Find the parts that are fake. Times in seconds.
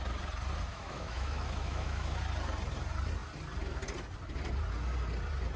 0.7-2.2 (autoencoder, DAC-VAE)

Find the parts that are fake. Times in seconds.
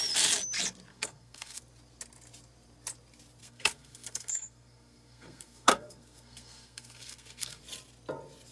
0.9-1.6 (codec, SNAC); 3.4-7.6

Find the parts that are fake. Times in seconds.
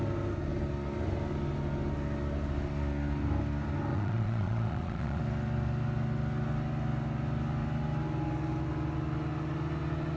3.9-5.2 (vocoder, Vocos)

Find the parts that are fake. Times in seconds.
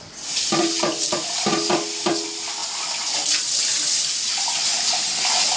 none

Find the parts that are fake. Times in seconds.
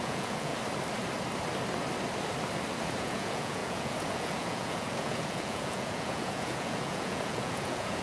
0.0-0.5 (vocoder, Vocos); 3.0-8.0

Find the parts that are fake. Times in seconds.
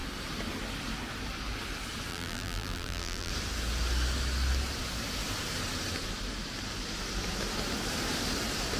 2.1-3.3 (vocoder, BigVGAN v2)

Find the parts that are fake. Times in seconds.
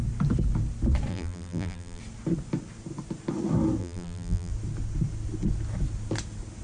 1.1-2.0 (vocoder, BigVGAN v2); 3.8-4.5